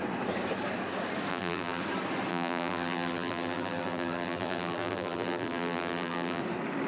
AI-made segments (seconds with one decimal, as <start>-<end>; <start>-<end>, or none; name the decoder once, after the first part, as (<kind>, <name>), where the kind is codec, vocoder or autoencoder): 1.3-1.8 (vocoder, BigVGAN v2); 2.3-6.4